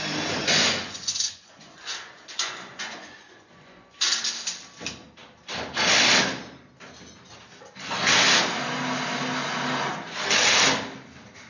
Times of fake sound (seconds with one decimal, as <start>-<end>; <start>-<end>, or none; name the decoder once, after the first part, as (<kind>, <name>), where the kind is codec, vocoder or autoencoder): 0.4-4.0 (vocoder, Vocos)